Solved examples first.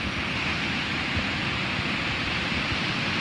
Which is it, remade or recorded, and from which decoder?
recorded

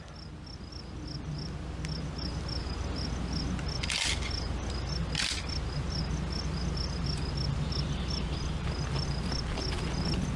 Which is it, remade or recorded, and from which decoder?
recorded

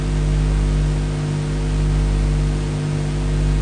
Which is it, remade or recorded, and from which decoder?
recorded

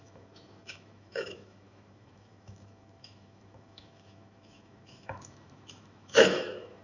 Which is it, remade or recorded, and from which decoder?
remade, autoencoder, DAC-VAE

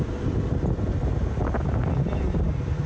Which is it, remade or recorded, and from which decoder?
recorded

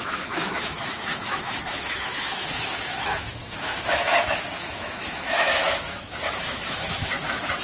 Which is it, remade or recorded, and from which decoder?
remade, autoencoder, DAC-VAE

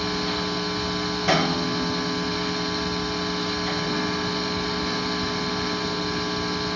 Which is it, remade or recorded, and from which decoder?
recorded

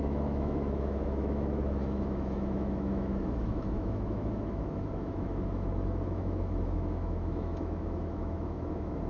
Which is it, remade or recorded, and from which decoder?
remade, autoencoder, DAC-VAE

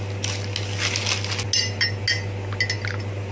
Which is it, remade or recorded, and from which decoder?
recorded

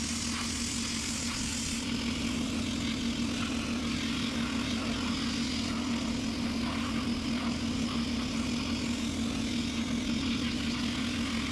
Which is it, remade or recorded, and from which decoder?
recorded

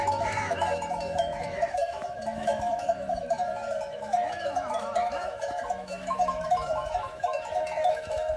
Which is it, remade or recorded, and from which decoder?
remade, autoencoder, DAC-VAE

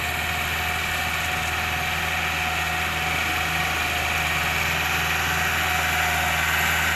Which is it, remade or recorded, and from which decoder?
recorded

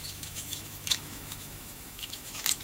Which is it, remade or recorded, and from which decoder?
remade, autoencoder, DAC-VAE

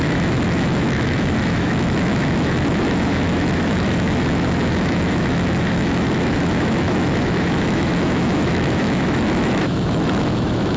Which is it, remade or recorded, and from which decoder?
remade, autoencoder, DAC-VAE